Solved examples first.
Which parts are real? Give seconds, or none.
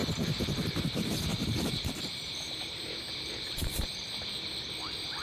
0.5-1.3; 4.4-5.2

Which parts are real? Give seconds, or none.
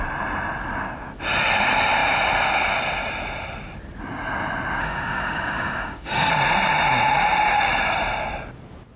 0.0-4.8; 6.3-9.0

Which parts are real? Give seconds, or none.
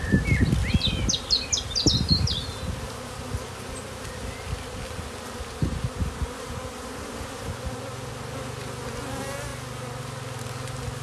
0.0-11.0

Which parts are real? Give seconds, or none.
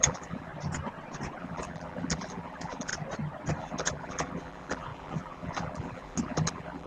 0.5-1.4; 2.9-3.6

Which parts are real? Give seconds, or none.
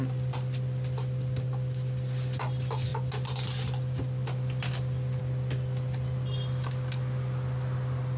0.0-8.2